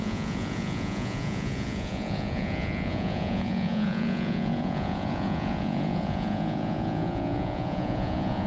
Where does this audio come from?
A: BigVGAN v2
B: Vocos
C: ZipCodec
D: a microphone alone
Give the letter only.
B